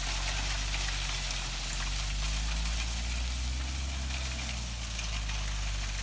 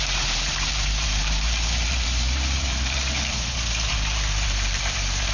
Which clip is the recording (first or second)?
first